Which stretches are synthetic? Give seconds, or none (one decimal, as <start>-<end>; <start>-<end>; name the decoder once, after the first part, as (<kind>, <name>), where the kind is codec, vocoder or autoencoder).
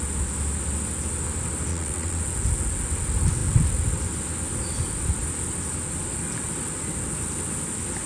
1.7-2.2 (vocoder, Vocos)